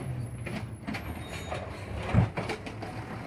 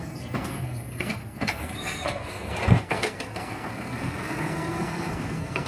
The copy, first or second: second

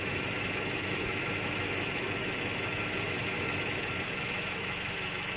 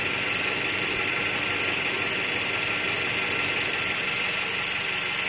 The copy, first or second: first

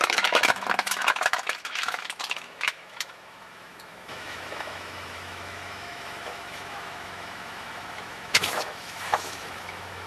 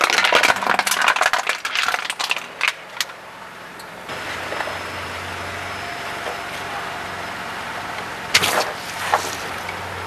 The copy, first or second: first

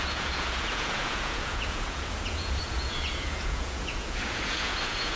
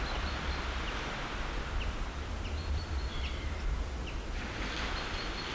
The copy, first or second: first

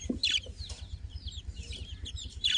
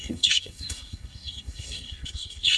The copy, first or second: second